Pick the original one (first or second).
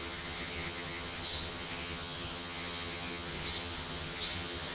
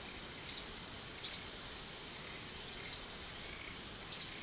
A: second